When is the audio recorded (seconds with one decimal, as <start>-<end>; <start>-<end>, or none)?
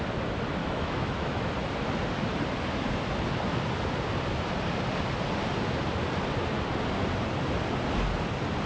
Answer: 0.0-0.6; 1.5-8.7